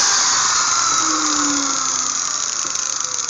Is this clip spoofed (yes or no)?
no